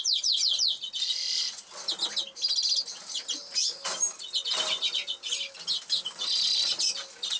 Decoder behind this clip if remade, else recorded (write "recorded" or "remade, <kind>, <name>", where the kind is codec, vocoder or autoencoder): recorded